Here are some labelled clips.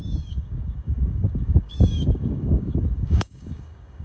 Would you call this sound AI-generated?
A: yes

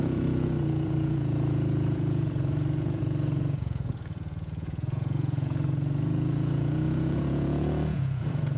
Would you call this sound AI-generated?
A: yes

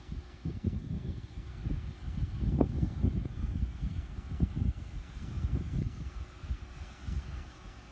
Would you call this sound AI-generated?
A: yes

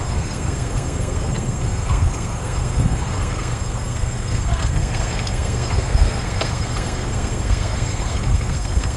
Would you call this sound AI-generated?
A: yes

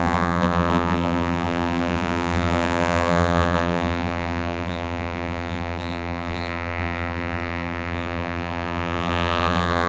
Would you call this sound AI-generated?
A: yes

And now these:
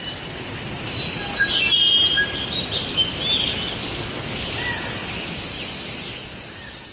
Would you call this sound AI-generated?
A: no